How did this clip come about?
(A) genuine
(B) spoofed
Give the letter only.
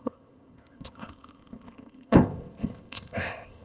B